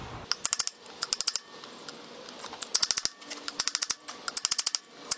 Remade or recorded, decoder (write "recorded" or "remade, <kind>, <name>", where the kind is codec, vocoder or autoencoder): recorded